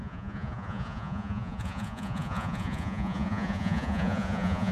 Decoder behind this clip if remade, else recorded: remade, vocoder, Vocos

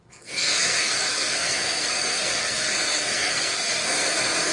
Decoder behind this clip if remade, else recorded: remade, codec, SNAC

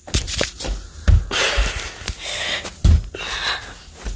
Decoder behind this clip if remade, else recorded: recorded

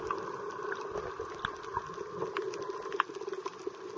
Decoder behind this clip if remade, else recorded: recorded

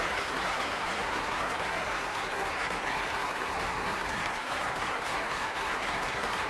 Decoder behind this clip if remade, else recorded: remade, codec, SNAC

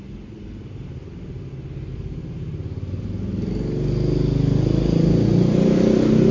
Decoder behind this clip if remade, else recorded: recorded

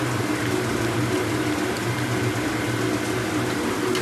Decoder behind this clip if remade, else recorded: recorded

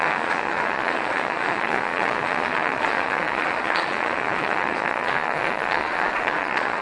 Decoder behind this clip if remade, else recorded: remade, vocoder, Vocos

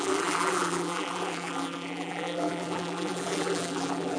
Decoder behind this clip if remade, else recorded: remade, vocoder, BigVGAN v2